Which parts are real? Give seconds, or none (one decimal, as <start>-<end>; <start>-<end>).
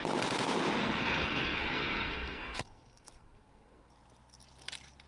0.0-0.8; 3.9-5.1